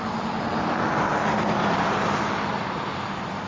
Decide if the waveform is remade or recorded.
recorded